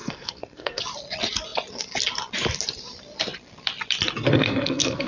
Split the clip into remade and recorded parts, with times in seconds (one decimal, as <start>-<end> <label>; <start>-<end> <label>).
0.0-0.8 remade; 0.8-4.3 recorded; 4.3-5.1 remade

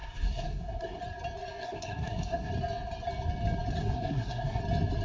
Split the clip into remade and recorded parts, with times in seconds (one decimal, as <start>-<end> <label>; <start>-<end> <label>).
0.0-1.0 remade; 1.0-1.6 recorded; 1.6-2.5 remade; 2.5-3.8 recorded; 3.8-4.6 remade; 4.6-5.0 recorded

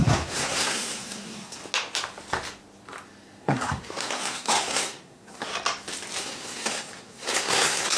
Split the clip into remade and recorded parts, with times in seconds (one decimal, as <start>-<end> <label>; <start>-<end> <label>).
0.0-1.6 remade; 1.6-3.4 recorded; 3.4-5.5 remade; 5.5-6.2 recorded; 6.2-8.0 remade

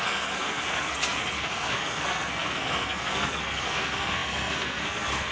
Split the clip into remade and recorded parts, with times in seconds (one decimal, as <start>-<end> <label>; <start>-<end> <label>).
0.0-5.3 remade

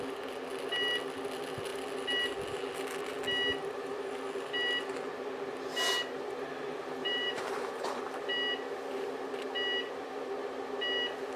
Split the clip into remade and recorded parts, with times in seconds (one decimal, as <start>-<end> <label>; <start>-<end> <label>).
0.0-7.0 recorded; 7.0-8.0 remade; 8.0-11.4 recorded

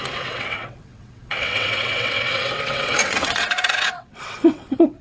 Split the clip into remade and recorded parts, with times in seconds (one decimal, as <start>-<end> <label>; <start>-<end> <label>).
0.0-5.0 remade